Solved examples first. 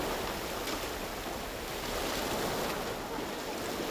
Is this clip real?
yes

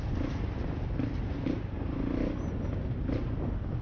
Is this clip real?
yes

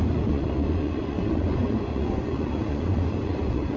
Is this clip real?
no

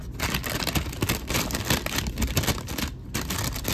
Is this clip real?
yes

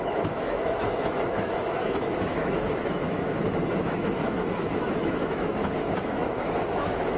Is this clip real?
no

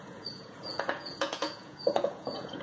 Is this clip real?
no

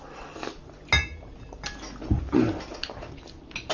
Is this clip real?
yes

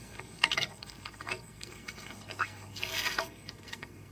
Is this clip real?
no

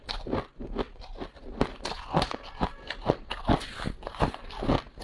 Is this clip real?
yes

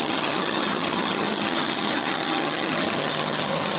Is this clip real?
no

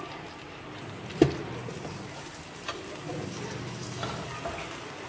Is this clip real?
yes